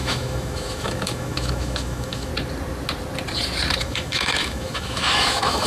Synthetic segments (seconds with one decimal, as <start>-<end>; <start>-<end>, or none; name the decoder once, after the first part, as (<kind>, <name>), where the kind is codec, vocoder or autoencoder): 0.0-2.3 (autoencoder, DAC-VAE); 3.8-5.7